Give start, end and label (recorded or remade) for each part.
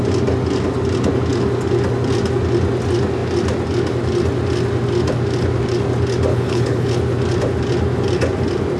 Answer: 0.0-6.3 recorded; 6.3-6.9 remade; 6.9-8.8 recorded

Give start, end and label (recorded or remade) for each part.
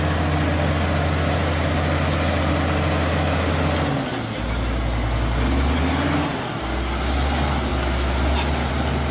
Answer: 0.0-9.1 recorded